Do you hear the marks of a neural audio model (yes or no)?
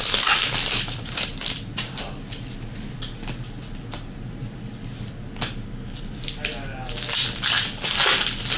no